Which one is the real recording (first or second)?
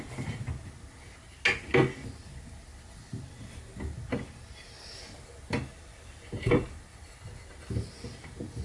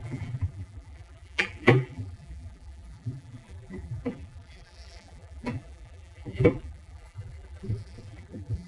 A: first